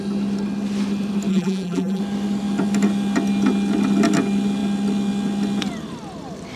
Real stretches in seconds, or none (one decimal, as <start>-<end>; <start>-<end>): 0.0-1.3; 2.0-6.6

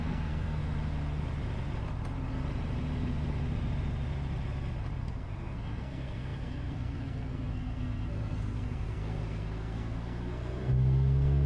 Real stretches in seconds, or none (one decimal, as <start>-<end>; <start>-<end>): 0.6-5.0

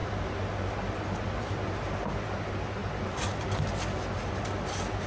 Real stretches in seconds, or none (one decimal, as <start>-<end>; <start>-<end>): 0.0-5.1

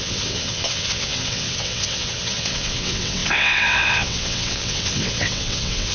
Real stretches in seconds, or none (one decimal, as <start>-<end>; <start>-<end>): none

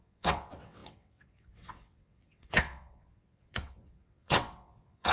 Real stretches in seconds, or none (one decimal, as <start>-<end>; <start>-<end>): none

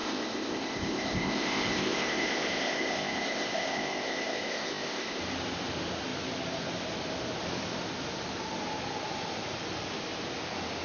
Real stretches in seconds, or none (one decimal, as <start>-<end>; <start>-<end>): 5.2-10.8

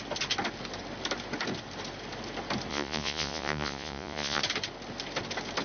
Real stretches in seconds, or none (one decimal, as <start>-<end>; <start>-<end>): 0.0-2.7; 4.4-5.6